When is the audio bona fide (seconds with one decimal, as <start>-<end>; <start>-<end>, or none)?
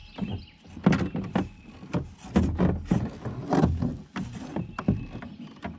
0.0-5.8